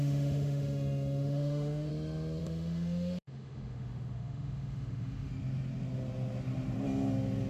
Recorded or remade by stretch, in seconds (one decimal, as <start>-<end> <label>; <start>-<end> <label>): 0.0-1.9 remade; 1.9-2.4 recorded; 2.4-5.3 remade; 5.3-7.5 recorded